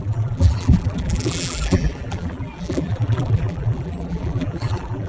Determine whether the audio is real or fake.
fake